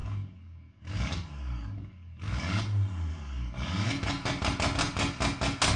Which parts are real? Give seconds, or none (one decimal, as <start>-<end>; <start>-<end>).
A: 2.6-3.1; 3.9-5.8